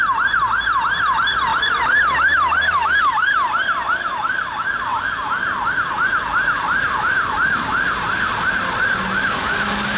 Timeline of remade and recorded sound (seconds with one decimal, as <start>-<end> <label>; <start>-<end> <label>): 0.0-10.0 recorded